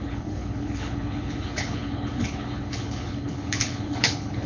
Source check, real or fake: fake